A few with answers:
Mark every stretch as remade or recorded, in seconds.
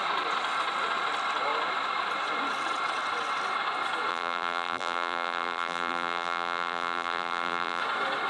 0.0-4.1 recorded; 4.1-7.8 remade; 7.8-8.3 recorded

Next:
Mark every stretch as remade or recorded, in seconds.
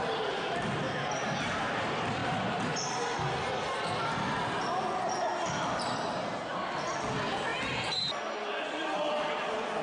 0.0-9.8 recorded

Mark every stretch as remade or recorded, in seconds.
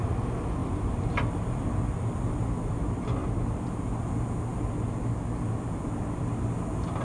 0.0-7.0 recorded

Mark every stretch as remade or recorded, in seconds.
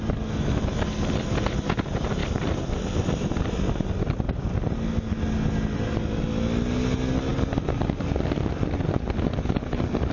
0.0-2.2 recorded; 2.2-3.5 remade; 3.5-10.1 recorded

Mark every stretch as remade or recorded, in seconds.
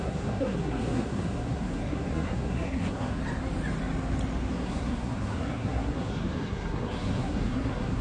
0.0-3.2 remade; 3.2-4.5 recorded; 4.5-8.0 remade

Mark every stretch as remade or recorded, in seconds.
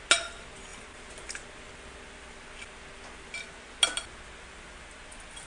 0.0-5.5 recorded